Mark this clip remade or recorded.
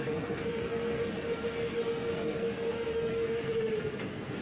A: remade